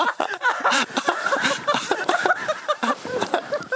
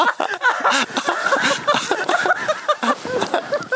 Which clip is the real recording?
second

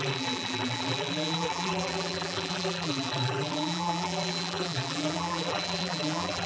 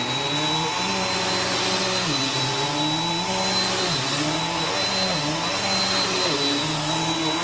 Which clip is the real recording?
second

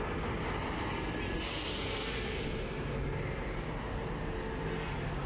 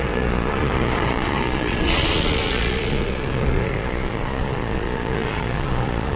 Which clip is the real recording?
first